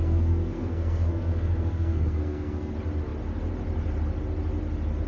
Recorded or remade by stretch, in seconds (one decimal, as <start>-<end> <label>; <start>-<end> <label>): 0.0-2.7 remade; 2.7-5.1 recorded